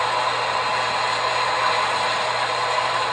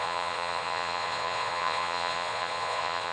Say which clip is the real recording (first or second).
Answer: first